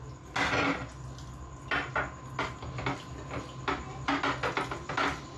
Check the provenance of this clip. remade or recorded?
recorded